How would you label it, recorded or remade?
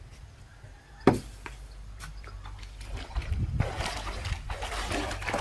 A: recorded